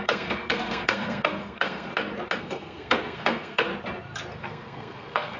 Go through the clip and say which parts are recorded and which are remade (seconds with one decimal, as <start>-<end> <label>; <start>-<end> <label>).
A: 0.0-1.9 remade; 1.9-2.4 recorded; 2.4-3.7 remade; 3.7-4.4 recorded; 4.4-5.4 remade